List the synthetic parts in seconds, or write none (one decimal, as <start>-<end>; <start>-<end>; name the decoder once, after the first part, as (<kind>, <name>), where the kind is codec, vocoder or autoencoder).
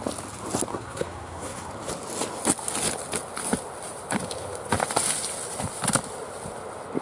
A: 0.7-1.7 (codec, SNAC)